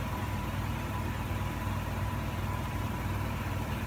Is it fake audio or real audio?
fake